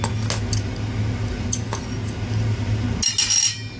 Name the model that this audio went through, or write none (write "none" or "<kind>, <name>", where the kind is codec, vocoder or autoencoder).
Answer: none